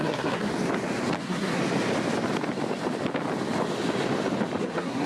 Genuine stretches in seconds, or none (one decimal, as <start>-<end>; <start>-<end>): 0.5-1.2; 1.6-4.6